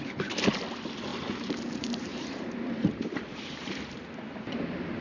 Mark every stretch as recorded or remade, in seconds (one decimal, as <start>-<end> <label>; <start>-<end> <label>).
0.0-1.1 recorded; 1.1-4.1 remade; 4.1-5.0 recorded